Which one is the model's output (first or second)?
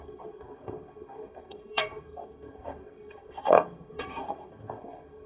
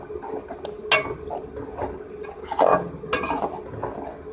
first